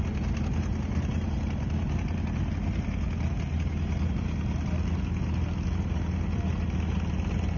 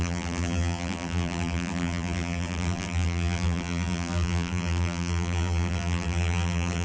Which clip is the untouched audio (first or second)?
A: first